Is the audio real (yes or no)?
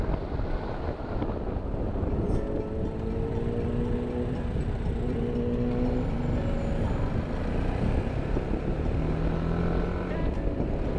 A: yes